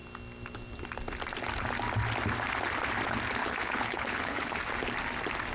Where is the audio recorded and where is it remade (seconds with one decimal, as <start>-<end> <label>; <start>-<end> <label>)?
0.0-3.4 recorded; 3.4-4.6 remade; 4.6-5.5 recorded